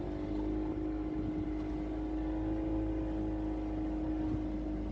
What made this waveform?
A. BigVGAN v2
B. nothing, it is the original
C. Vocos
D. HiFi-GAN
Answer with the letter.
B